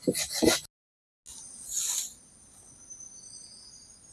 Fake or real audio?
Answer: real